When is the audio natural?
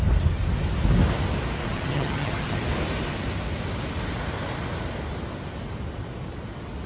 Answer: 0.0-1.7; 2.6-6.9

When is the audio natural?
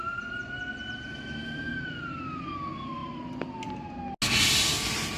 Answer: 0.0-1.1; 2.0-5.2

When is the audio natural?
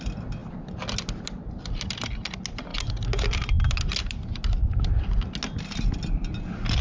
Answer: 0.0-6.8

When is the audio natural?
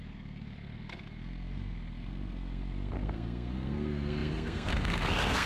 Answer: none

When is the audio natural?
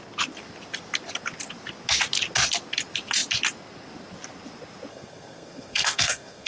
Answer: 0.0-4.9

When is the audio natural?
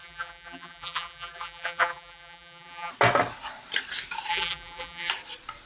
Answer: 2.9-4.3; 5.1-5.7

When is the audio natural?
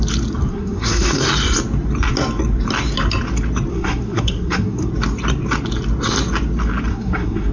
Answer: 0.0-0.5; 1.2-3.7; 4.9-6.9